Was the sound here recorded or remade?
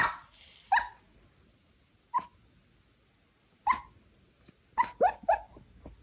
recorded